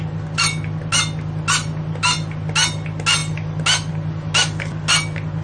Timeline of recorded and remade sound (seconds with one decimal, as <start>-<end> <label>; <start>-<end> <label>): 0.0-5.4 recorded

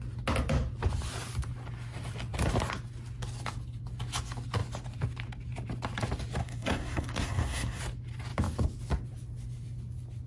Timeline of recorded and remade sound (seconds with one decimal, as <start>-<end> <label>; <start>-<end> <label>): 0.0-6.4 recorded; 6.4-7.8 remade; 7.8-10.3 recorded

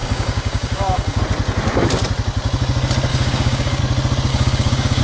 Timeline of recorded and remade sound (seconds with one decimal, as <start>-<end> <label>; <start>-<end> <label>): 0.0-1.2 remade; 1.2-3.1 recorded; 3.1-3.8 remade; 3.8-4.3 recorded; 4.3-5.0 remade

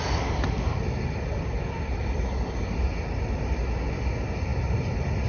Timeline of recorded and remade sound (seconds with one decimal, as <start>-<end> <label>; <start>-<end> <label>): 0.0-5.3 recorded

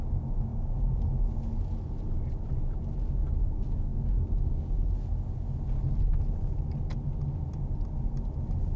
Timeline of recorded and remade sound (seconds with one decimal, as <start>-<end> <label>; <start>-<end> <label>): 0.0-8.8 recorded

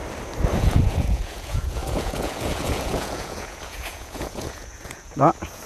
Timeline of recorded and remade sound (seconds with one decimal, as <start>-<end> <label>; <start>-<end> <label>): 0.0-0.6 recorded; 0.6-5.7 remade